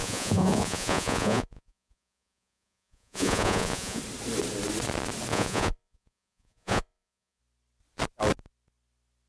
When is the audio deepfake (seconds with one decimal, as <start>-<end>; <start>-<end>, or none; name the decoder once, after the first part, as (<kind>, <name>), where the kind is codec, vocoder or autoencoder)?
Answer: 0.0-4.0 (vocoder, Vocos); 5.3-7.4